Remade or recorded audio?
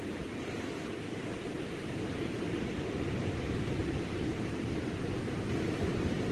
recorded